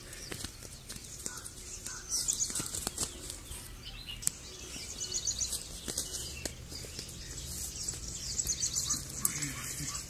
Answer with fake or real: real